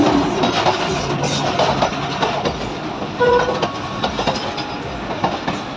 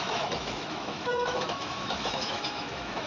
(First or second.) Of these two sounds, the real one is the first